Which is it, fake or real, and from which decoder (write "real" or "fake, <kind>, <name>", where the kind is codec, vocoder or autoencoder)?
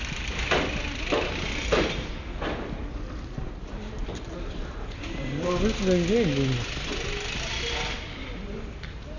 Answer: real